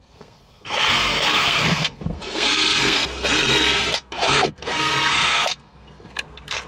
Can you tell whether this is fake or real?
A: fake